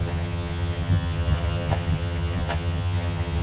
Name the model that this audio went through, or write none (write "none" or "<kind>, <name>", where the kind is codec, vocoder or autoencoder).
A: vocoder, HiFi-GAN